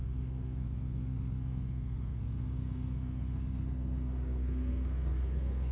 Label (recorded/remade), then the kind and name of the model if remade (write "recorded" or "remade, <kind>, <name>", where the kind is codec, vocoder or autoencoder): remade, codec, SNAC